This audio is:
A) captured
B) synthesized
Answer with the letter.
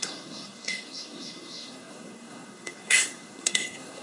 B